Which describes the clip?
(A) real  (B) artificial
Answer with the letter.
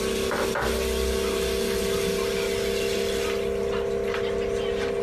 A